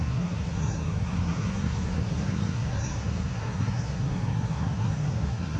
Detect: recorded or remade remade